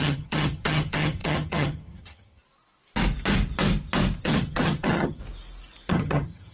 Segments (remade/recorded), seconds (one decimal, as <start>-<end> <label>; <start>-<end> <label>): 0.0-2.4 remade; 2.4-4.2 recorded; 4.2-5.2 remade; 5.2-5.9 recorded; 5.9-6.5 remade